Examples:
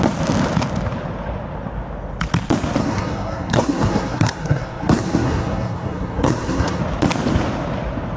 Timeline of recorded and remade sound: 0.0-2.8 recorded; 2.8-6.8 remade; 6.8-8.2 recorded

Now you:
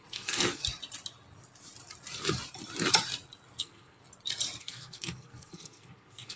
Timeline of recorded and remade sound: 0.0-0.6 remade; 0.6-3.6 recorded; 3.6-4.0 remade; 4.0-4.6 recorded; 4.6-6.4 remade